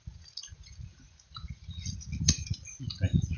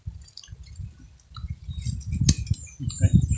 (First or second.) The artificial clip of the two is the first